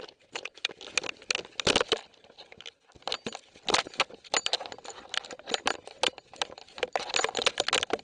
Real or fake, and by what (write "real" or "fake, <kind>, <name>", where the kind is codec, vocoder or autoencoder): real